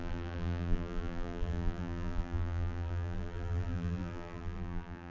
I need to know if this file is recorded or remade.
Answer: remade